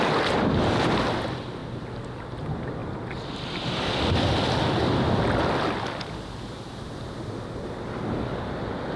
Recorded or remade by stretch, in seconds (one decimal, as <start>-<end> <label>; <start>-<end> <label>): 0.0-1.6 recorded; 1.6-2.2 remade; 2.2-9.0 recorded